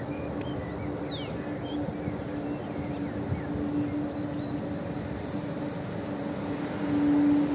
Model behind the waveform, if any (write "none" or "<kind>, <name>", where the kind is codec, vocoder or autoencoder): none